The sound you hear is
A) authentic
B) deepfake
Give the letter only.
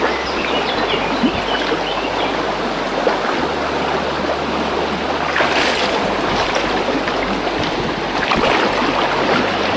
A